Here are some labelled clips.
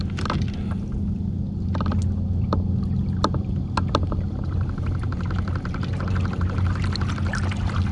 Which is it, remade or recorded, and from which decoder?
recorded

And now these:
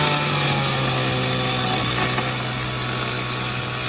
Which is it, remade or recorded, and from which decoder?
recorded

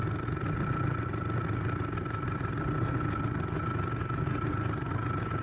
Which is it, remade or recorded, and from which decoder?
recorded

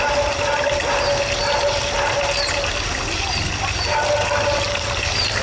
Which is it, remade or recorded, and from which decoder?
recorded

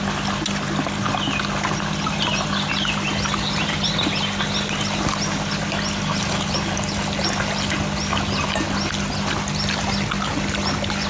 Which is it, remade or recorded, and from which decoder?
recorded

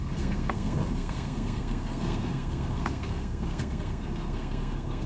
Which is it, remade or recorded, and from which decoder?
remade, codec, SNAC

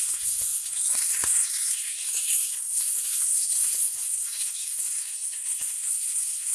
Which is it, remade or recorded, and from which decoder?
remade, codec, SNAC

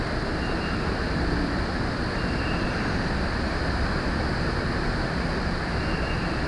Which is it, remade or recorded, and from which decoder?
recorded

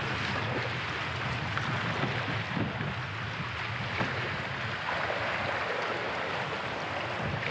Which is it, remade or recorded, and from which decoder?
recorded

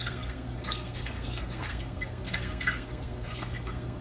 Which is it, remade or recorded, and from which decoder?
remade, codec, SNAC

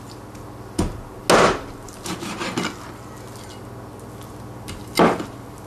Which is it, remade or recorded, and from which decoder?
recorded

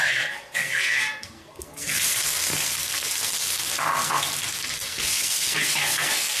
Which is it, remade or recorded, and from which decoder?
remade, codec, SNAC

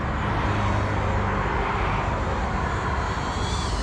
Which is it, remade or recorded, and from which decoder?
recorded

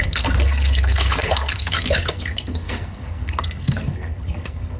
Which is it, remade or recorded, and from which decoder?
remade, codec, SNAC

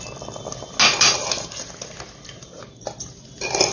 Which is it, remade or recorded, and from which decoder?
recorded